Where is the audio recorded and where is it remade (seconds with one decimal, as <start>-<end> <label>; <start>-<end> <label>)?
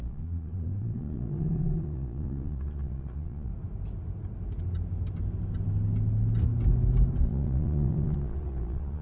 0.0-3.5 remade; 3.5-7.2 recorded; 7.2-9.0 remade